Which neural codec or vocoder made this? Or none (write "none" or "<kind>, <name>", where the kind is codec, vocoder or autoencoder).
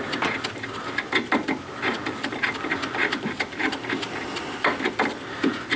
none